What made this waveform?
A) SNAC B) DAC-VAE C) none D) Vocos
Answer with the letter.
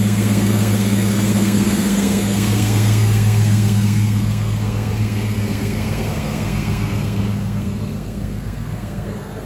A